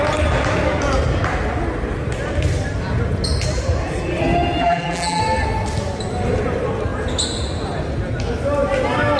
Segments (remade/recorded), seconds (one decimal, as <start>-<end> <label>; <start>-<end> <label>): 0.0-4.6 recorded; 4.6-5.2 remade; 5.2-9.2 recorded